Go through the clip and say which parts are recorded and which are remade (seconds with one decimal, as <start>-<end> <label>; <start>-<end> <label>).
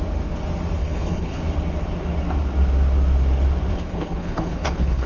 0.0-0.8 recorded; 0.8-1.4 remade; 1.4-3.7 recorded; 3.7-5.1 remade